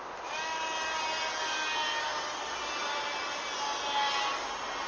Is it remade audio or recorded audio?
recorded